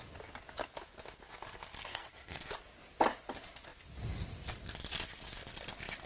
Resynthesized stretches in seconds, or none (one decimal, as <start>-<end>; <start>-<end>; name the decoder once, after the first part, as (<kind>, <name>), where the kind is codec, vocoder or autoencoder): 1.9-2.5 (codec, SNAC)